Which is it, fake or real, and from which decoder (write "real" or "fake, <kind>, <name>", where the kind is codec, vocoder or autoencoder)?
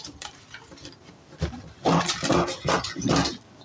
real